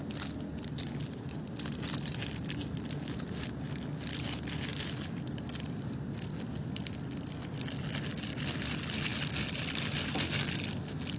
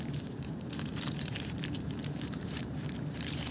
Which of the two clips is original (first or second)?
first